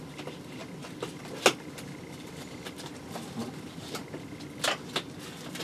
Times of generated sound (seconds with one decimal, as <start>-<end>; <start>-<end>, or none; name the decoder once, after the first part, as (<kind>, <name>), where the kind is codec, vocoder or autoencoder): none

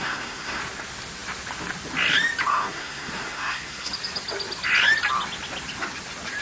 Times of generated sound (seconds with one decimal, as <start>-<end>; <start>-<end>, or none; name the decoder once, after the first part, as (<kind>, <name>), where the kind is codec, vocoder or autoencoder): 0.0-0.6 (codec, SNAC); 2.5-3.9

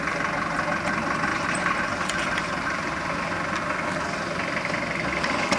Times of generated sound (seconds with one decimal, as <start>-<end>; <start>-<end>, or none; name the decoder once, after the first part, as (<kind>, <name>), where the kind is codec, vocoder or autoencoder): 1.3-2.9 (vocoder, BigVGAN v2)

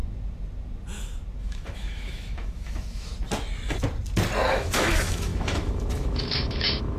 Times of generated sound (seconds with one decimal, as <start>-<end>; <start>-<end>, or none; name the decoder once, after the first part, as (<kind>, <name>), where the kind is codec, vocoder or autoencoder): 1.4-3.1 (autoencoder, DAC-VAE); 4.5-7.0